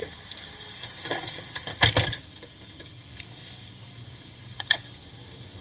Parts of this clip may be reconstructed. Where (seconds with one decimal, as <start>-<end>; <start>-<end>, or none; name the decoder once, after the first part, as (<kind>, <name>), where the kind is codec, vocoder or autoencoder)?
0.6-1.7 (codec, DAC); 2.3-5.0